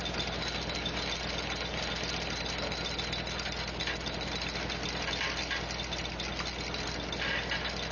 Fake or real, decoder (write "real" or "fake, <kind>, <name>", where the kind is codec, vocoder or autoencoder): real